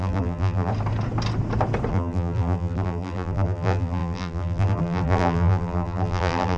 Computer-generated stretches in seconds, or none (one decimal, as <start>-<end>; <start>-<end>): 0.0-0.7; 1.9-6.6